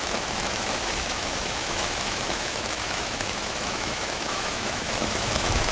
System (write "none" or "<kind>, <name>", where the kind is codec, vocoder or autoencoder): autoencoder, DAC-VAE